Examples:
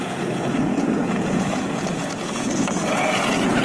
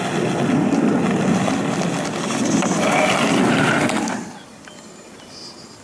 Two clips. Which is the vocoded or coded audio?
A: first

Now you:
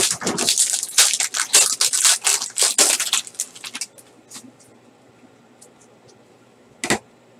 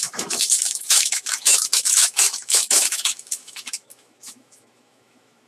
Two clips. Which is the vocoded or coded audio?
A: second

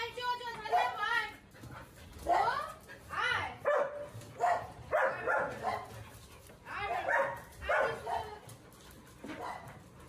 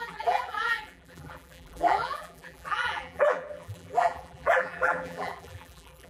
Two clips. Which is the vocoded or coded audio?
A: second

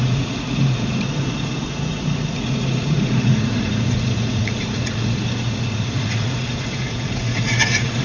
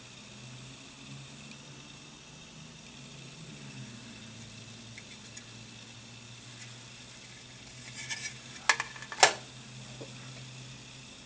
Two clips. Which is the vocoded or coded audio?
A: first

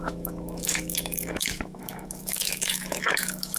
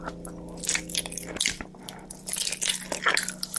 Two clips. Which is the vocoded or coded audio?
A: first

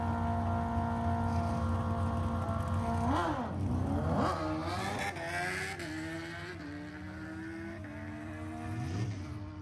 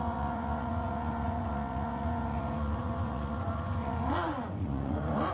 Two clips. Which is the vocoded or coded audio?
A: second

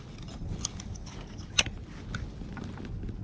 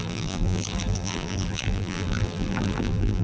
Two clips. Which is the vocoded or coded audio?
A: second